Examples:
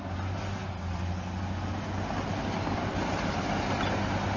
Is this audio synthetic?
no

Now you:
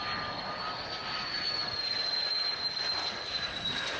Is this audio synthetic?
no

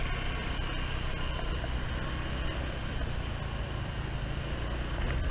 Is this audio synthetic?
no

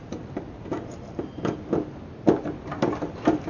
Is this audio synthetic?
no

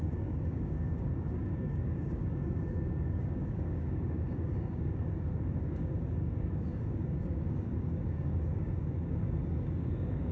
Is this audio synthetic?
yes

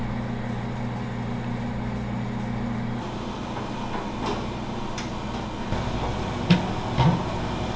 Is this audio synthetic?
no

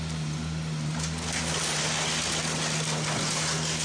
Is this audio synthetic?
no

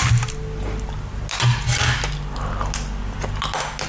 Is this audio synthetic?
no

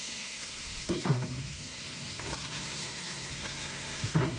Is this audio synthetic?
yes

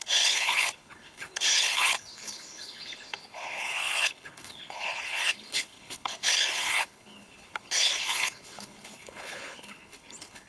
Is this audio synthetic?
yes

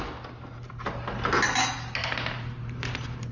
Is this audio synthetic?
no